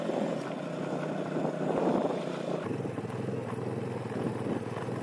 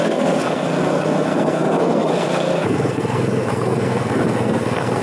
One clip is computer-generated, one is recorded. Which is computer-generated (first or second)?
second